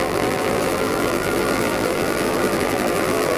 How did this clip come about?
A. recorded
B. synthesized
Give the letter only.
B